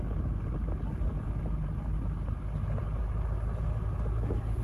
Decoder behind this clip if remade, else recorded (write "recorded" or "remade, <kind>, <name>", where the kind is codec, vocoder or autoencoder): recorded